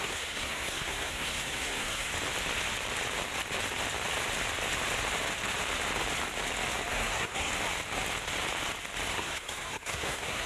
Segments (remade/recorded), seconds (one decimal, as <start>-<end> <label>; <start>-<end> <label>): 0.0-2.1 remade; 2.1-6.9 recorded; 6.9-7.5 remade; 7.5-9.1 recorded; 9.1-10.5 remade